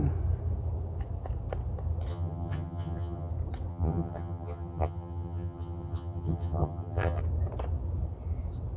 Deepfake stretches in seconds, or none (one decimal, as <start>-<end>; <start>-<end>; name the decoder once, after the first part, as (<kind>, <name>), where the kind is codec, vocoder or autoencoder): 2.1-3.3 (vocoder, HiFi-GAN); 3.7-7.2